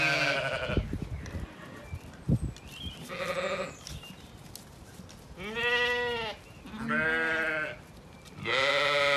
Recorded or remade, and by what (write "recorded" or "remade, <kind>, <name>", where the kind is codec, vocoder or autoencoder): recorded